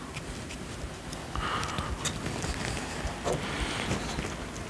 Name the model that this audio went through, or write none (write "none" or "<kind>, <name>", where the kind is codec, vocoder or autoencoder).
none